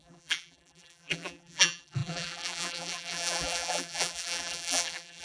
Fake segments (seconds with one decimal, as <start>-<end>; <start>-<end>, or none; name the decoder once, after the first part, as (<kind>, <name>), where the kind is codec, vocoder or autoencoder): 0.0-5.2 (vocoder, BigVGAN v2)